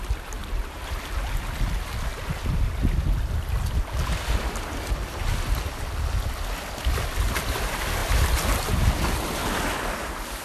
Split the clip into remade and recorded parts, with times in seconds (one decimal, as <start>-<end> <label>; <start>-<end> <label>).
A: 0.0-0.4 recorded; 0.4-1.0 remade; 1.0-10.4 recorded